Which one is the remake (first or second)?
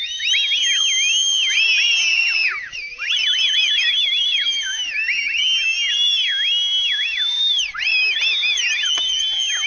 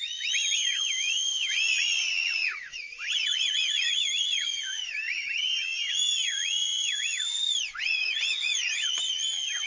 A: second